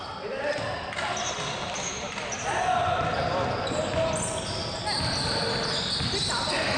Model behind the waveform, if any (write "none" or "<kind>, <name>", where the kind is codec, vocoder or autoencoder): none